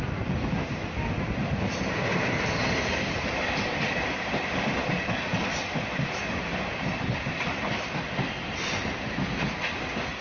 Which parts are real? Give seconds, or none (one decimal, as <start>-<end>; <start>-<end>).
0.0-1.4; 4.8-7.3; 7.9-10.2